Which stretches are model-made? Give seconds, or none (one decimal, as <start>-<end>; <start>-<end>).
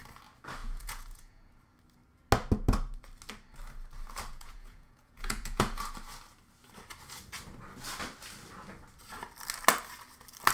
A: 0.6-1.5; 4.3-5.8